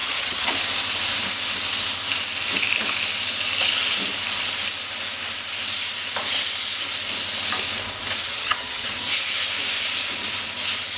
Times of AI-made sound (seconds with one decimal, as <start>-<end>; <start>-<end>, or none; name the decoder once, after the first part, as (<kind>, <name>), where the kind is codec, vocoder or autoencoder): 0.0-0.5 (vocoder, HiFi-GAN); 8.2-8.9